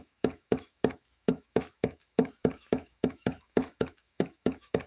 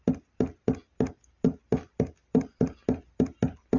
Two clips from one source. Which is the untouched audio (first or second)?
second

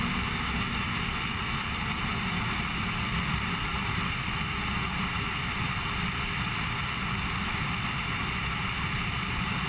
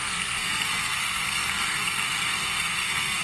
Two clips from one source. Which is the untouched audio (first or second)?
first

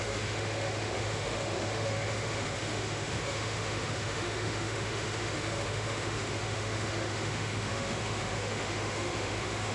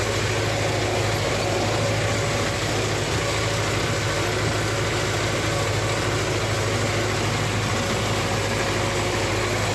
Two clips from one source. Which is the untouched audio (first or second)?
second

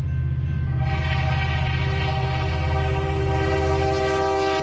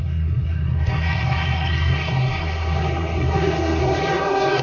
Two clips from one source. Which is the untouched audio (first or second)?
first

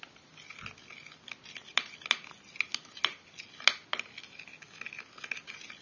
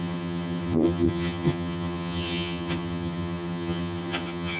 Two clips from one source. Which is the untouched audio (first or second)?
first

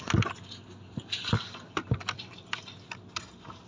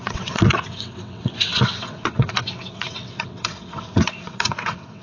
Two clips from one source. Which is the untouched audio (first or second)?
first